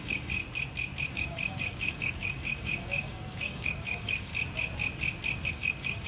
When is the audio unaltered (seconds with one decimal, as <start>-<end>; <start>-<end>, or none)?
0.4-1.1; 4.3-5.5